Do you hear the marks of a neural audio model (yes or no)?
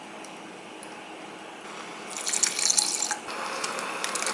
no